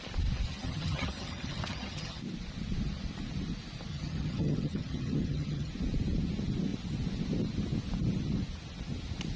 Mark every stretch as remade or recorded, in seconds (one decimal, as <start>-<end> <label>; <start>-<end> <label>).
0.0-0.5 recorded; 0.5-2.2 remade; 2.2-3.9 recorded; 3.9-5.7 remade; 5.7-9.4 recorded